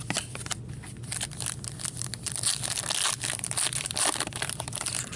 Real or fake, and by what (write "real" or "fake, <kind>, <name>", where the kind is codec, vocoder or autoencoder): real